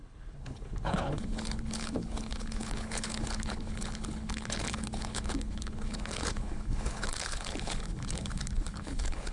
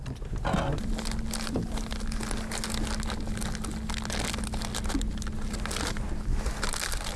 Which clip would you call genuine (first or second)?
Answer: second